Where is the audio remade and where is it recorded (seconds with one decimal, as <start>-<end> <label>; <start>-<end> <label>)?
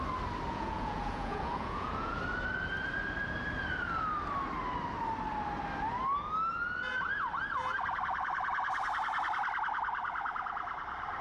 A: 0.0-0.5 recorded; 0.5-2.2 remade; 2.2-11.2 recorded